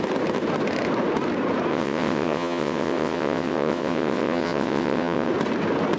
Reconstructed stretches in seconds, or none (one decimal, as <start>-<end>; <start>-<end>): 1.7-5.3